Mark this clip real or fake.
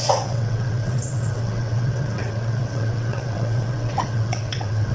fake